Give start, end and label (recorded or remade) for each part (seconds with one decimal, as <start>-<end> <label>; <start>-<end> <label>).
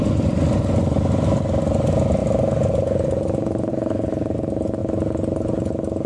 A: 0.0-6.1 recorded